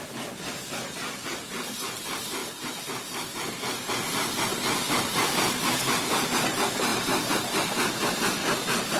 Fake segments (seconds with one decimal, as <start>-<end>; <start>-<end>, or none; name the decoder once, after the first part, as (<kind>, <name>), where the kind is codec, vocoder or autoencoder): 2.4-3.0 (vocoder, BigVGAN v2); 4.5-6.0